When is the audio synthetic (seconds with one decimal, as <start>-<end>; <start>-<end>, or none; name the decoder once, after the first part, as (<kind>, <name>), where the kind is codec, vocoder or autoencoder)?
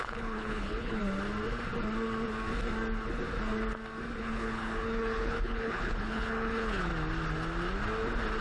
0.0-1.0 (codec, HILCodec); 4.2-6.9